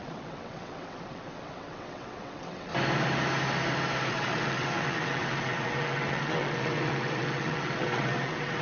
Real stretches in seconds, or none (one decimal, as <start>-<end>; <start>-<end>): 2.7-4.1